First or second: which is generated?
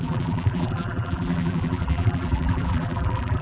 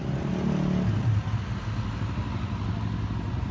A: first